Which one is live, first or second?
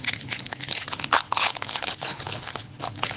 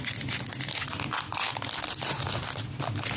second